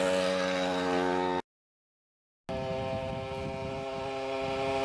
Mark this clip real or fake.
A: real